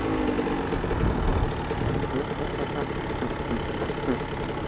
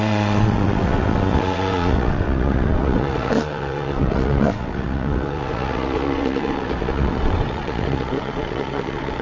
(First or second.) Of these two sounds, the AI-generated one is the second